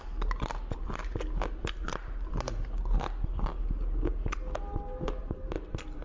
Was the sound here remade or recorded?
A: recorded